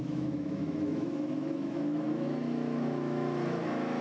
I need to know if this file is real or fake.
fake